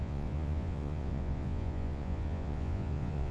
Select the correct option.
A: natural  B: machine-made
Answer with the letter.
B